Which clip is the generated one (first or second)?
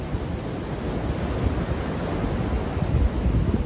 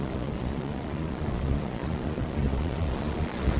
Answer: second